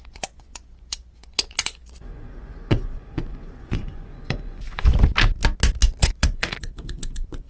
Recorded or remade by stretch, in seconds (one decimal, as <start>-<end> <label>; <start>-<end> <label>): 0.0-4.9 remade; 4.9-6.0 recorded; 6.0-7.5 remade